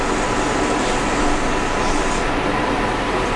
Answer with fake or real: real